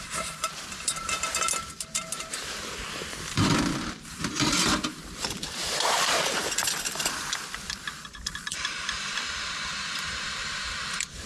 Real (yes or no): no